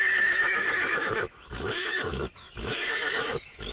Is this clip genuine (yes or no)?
no